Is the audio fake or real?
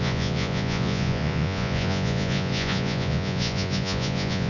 fake